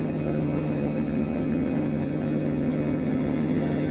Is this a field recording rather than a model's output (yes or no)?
no